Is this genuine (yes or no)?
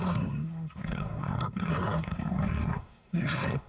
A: no